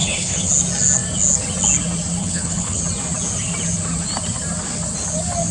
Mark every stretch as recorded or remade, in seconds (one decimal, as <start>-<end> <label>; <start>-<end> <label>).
0.0-0.5 remade; 0.5-2.2 recorded; 2.2-2.8 remade; 2.8-5.5 recorded